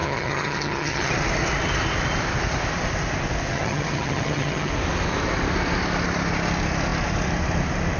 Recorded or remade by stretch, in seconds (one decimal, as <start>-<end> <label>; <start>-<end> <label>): 0.0-1.1 remade; 1.1-3.5 recorded; 3.5-4.7 remade; 4.7-8.0 recorded